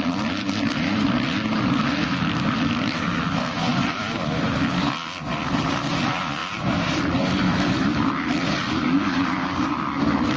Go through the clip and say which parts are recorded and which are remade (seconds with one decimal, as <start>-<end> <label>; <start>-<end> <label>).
0.0-3.7 recorded; 3.7-4.7 remade; 4.7-6.4 recorded; 6.4-8.3 remade; 8.3-10.4 recorded